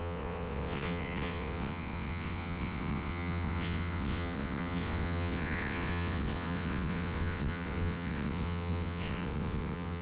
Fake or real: fake